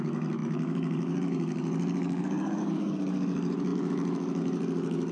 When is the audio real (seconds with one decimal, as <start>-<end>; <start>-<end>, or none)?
none